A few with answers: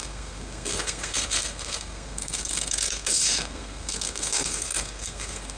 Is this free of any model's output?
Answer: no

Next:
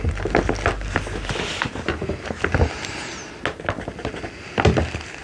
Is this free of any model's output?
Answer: yes